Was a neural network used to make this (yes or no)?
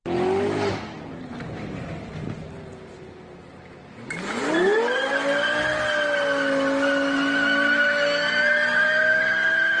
no